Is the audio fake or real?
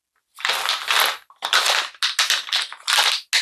real